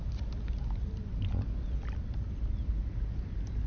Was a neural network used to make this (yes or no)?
no